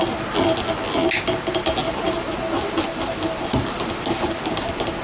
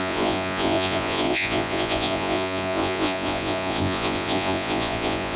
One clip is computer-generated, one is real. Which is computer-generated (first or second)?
second